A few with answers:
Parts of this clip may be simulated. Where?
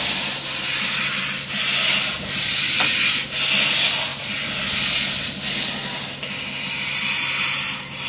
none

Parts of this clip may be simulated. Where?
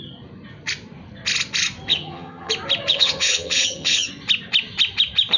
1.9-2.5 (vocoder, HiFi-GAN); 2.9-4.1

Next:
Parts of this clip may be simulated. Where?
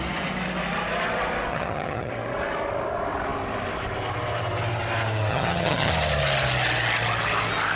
1.5-2.1 (vocoder, HiFi-GAN); 5.3-5.9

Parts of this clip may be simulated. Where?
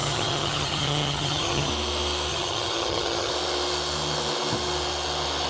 0.0-1.7 (vocoder, HiFi-GAN); 2.3-3.3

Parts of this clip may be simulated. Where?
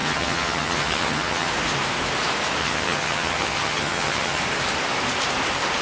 0.0-1.5 (vocoder, HiFi-GAN); 2.6-4.4